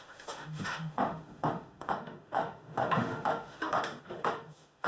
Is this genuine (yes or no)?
no